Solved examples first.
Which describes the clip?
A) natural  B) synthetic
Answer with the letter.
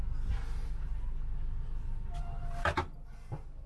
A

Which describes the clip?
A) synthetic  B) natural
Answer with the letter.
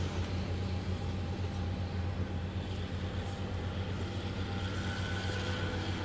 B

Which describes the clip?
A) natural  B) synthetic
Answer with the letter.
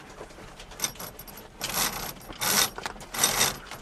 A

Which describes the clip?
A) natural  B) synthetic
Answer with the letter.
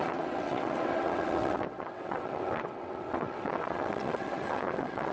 B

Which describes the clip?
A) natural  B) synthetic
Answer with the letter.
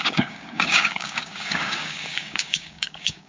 B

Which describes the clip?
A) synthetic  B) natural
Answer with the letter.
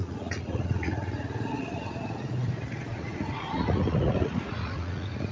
A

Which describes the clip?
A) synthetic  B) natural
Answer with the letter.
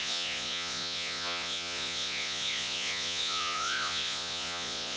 A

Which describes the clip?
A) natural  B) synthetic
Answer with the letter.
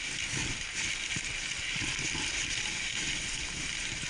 A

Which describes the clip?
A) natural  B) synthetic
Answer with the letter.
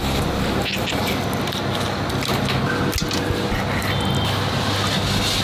A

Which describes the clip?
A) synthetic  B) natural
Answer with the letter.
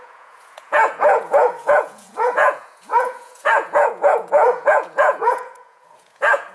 A